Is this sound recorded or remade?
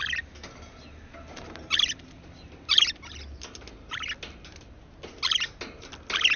recorded